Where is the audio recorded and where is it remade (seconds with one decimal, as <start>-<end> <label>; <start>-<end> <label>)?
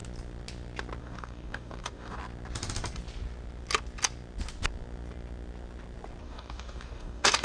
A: 0.0-1.0 recorded; 1.0-2.2 remade; 2.2-6.2 recorded; 6.2-7.4 remade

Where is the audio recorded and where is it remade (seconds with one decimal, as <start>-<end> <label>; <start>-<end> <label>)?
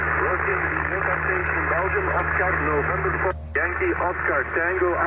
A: 0.0-0.5 recorded; 0.5-1.0 remade; 1.0-1.4 recorded; 1.4-2.9 remade; 2.9-5.1 recorded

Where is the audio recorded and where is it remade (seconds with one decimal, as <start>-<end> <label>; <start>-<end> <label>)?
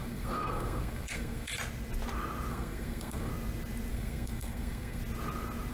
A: 0.0-1.5 remade; 1.5-2.5 recorded; 2.5-3.3 remade; 3.3-3.9 recorded; 3.9-5.0 remade; 5.0-5.7 recorded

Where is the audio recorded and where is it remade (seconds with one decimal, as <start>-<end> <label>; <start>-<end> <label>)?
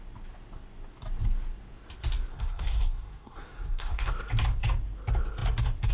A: 0.0-2.3 recorded; 2.3-4.1 remade; 4.1-5.9 recorded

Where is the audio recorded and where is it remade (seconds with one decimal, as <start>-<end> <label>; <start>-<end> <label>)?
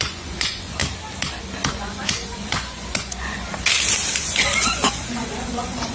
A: 0.0-0.8 remade; 0.8-1.7 recorded; 1.7-3.5 remade; 3.5-4.1 recorded; 4.1-5.9 remade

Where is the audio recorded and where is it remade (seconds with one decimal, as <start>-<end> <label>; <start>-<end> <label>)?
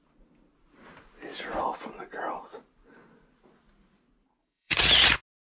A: 0.0-4.4 recorded; 4.4-4.9 remade; 4.9-5.5 recorded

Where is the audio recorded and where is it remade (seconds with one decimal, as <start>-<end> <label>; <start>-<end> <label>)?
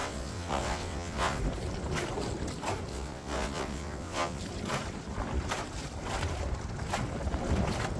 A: 0.0-1.4 remade; 1.4-2.9 recorded; 2.9-4.4 remade; 4.4-8.0 recorded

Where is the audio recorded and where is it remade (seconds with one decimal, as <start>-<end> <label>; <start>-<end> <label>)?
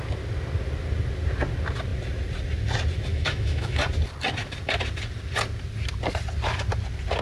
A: 0.0-3.1 recorded; 3.1-3.8 remade; 3.8-7.2 recorded